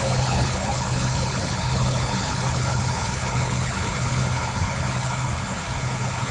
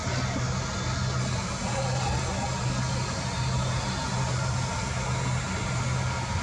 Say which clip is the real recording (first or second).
second